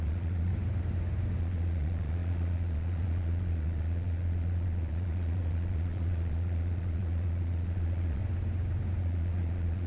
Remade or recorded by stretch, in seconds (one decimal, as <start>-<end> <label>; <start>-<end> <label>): 0.0-0.5 remade; 0.5-1.4 recorded; 1.4-8.2 remade; 8.2-9.0 recorded; 9.0-9.9 remade